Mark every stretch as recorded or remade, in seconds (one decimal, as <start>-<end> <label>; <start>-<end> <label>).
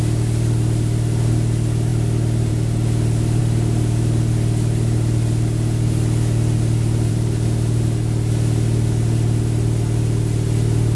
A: 0.0-10.9 recorded